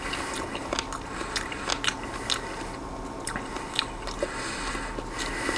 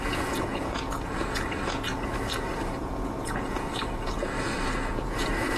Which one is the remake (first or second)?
second